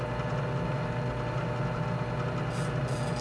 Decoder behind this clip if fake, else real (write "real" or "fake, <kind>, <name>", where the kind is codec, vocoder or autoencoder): real